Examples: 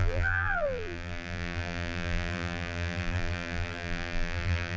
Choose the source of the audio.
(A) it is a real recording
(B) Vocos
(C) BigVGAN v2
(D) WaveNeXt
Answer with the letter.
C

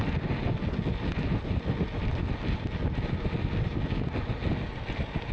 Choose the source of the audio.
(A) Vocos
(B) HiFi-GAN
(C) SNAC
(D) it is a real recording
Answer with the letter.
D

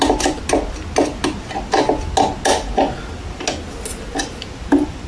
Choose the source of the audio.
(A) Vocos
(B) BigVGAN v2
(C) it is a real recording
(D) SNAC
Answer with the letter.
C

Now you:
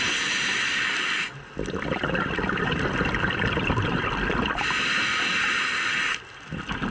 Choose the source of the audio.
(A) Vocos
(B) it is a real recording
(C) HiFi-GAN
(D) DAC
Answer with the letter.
B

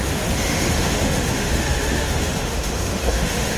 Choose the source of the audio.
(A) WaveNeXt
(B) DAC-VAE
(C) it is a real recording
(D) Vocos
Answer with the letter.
B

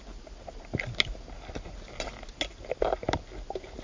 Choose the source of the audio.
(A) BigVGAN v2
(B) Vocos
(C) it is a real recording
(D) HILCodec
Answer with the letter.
C